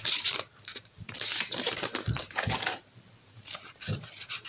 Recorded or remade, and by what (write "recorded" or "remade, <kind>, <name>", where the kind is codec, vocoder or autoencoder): remade, vocoder, BigVGAN v2